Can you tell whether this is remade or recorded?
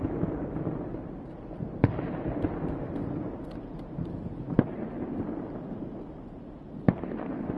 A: recorded